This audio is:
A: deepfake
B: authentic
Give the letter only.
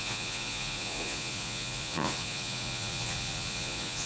A